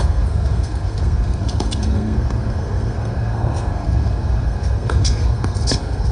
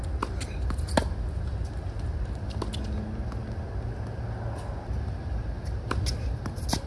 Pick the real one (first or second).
second